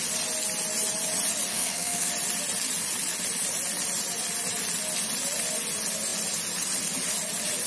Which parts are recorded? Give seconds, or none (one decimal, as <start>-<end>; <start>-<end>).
0.0-1.5; 2.1-7.7